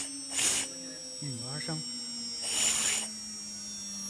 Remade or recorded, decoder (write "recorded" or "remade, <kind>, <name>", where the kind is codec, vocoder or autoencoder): recorded